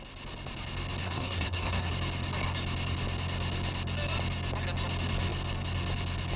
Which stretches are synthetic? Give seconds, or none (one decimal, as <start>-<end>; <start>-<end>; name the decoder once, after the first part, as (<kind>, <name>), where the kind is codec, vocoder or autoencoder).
1.0-1.9 (codec, SNAC)

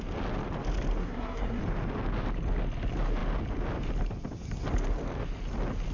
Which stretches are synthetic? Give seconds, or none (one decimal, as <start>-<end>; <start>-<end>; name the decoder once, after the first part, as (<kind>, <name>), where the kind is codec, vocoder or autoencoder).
1.0-1.6 (codec, SNAC)

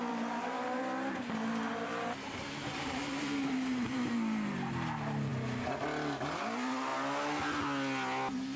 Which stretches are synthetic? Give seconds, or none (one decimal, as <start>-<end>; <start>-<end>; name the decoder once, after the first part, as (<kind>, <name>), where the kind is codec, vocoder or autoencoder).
0.0-0.8 (vocoder, BigVGAN v2); 1.7-4.7

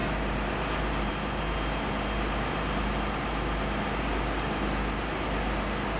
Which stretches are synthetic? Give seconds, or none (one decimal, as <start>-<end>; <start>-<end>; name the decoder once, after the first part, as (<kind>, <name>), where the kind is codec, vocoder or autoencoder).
none

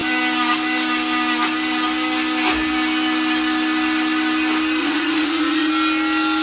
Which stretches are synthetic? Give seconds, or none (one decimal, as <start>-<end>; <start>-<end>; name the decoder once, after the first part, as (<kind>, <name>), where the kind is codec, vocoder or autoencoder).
4.8-5.7 (vocoder, Vocos)

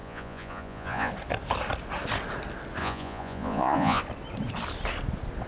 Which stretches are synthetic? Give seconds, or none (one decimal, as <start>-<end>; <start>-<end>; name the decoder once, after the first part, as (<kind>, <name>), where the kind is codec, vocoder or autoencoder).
0.0-1.1 (vocoder, Vocos); 2.8-4.0

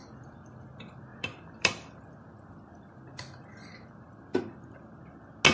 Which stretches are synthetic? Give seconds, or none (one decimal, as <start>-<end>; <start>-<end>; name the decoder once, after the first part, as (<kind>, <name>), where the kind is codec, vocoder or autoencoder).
0.0-0.6 (vocoder, BigVGAN v2); 1.1-4.4

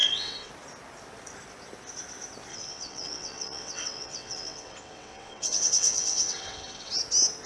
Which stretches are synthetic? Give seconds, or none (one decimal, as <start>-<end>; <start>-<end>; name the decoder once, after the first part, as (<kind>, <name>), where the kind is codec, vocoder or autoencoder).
0.0-0.5 (vocoder, WaveNeXt); 2.5-6.9